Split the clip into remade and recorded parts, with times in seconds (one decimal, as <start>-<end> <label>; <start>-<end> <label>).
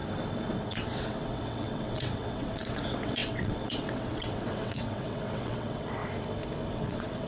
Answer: 0.0-0.6 recorded; 0.6-6.0 remade; 6.0-6.7 recorded; 6.7-7.3 remade